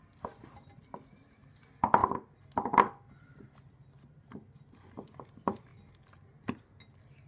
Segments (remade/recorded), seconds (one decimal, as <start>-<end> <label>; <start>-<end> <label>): 0.0-7.3 recorded